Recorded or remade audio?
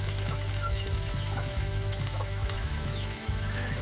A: remade